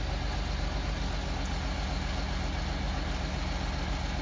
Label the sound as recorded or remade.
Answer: recorded